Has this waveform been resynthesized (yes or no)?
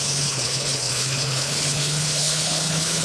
yes